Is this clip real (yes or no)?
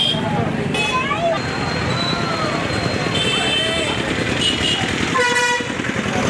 yes